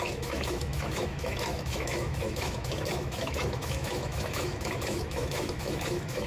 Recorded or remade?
remade